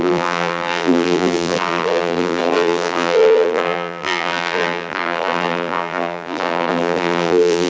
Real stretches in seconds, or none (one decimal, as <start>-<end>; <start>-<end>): none